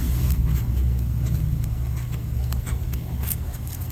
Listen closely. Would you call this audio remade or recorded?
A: remade